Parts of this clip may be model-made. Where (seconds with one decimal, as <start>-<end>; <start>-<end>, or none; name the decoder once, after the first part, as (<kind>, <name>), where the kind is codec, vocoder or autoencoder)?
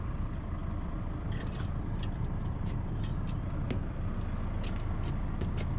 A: 0.6-4.1 (vocoder, BigVGAN v2)